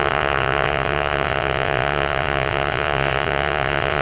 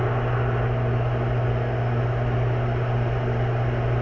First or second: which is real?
second